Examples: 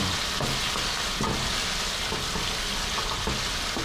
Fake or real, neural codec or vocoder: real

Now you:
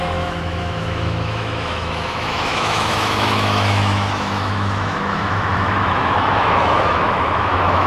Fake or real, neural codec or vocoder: fake, autoencoder, DAC-VAE